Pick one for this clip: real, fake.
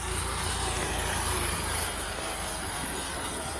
real